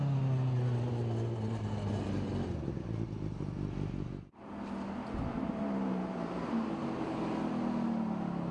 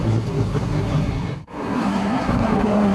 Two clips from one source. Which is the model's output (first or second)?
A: second